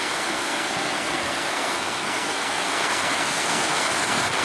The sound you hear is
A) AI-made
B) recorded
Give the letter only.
A